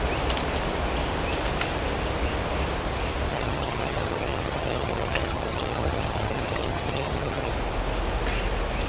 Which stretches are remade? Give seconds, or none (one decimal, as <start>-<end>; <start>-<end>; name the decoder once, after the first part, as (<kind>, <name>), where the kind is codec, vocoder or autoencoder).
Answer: 3.3-7.5 (vocoder, HiFi-GAN)